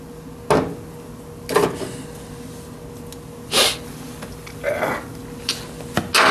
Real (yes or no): yes